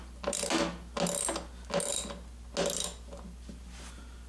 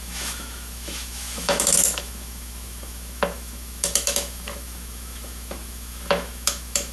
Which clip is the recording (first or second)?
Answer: first